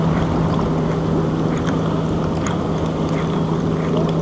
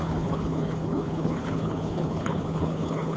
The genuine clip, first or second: first